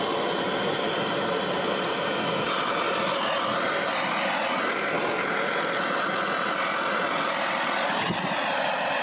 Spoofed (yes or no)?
no